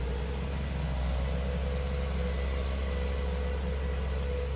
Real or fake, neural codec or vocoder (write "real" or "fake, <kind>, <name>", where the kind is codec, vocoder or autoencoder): real